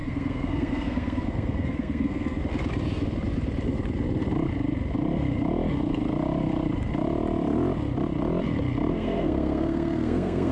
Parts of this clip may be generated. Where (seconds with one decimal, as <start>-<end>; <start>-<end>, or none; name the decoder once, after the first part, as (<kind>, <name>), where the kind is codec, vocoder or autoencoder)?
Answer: 0.0-2.4 (codec, SNAC); 8.9-10.5